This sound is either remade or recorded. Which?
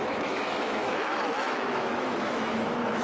remade